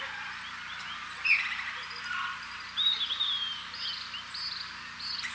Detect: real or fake real